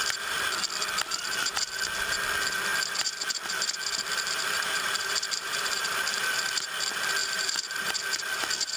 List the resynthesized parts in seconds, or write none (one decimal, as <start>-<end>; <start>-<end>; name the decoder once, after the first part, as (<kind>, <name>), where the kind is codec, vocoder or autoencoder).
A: 4.1-6.2 (vocoder, BigVGAN v2); 7.2-7.9